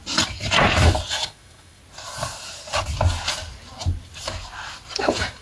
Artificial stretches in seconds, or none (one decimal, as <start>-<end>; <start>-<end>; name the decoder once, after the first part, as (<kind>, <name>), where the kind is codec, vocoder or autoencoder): 1.1-1.8 (autoencoder, DAC-VAE); 5.0-5.4